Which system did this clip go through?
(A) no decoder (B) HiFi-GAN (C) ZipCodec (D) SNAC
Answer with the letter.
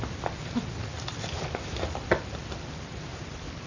A